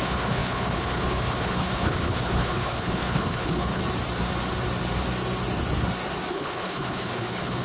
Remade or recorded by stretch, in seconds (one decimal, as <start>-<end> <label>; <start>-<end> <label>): 0.0-3.8 remade; 3.8-6.3 recorded; 6.3-7.6 remade